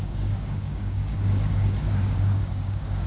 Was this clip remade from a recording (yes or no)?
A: yes